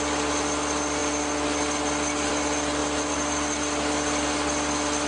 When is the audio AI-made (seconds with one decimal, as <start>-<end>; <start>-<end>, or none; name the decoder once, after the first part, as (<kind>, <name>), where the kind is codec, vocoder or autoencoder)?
none